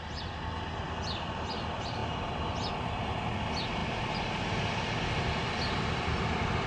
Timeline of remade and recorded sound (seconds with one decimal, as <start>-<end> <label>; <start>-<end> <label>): 0.0-3.8 recorded; 3.8-6.2 remade; 6.2-6.7 recorded